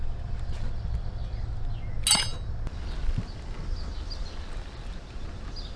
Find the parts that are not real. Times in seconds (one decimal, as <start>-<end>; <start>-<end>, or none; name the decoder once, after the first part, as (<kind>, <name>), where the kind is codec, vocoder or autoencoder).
none